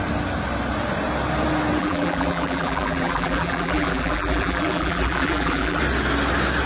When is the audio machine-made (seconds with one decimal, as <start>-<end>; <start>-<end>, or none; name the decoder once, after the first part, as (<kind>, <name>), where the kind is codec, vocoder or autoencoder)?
1.8-5.8 (vocoder, BigVGAN v2)